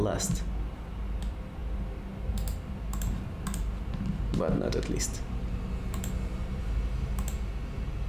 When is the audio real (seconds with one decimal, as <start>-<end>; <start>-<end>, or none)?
0.0-8.1